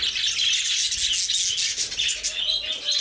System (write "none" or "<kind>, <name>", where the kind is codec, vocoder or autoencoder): none